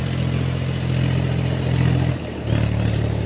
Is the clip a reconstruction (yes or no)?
no